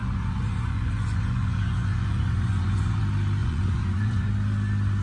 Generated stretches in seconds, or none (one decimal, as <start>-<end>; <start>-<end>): 0.0-3.0; 3.4-4.3